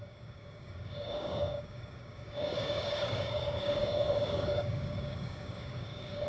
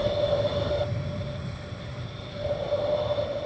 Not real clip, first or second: first